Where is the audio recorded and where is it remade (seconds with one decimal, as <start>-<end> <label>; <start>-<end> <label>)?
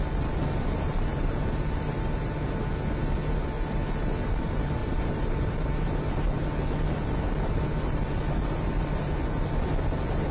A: 0.0-1.1 recorded; 1.1-2.7 remade; 2.7-4.8 recorded; 4.8-5.7 remade; 5.7-10.3 recorded